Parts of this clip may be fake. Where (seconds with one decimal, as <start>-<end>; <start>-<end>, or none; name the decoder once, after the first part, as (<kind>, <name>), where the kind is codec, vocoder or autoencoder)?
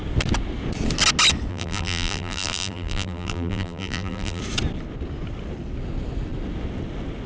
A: 1.5-4.4 (vocoder, BigVGAN v2)